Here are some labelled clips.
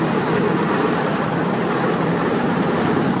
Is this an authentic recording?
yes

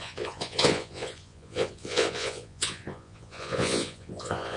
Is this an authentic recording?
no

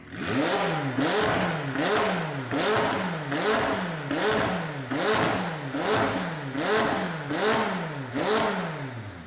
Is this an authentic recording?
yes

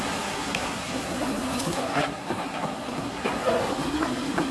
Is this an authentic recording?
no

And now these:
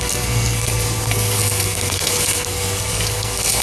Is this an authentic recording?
no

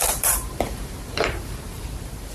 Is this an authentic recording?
no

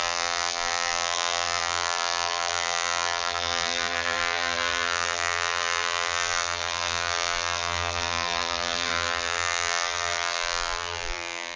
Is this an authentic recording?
no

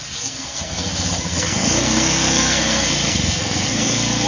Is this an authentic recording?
no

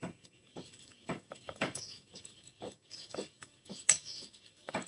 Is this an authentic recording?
no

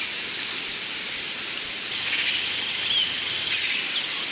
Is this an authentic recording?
yes